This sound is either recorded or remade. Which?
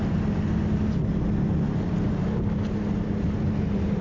recorded